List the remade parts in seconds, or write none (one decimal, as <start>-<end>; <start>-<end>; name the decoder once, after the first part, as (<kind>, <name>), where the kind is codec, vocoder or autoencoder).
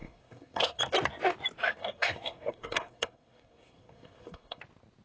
0.0-0.8 (codec, SNAC); 1.6-4.6